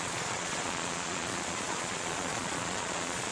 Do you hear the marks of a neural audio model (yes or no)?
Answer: yes